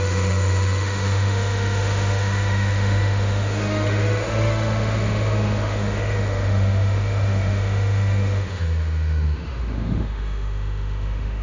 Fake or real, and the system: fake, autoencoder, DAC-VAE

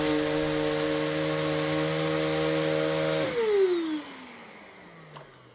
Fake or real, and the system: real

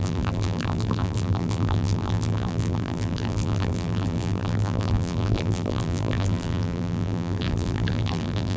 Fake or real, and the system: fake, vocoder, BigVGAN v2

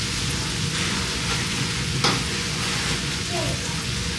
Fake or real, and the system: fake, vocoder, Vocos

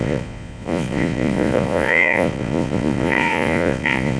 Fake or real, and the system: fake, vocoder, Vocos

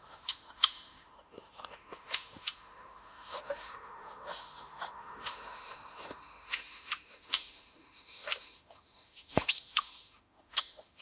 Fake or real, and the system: fake, autoencoder, DAC-VAE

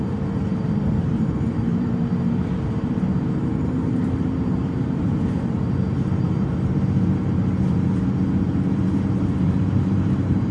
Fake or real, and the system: fake, vocoder, BigVGAN v2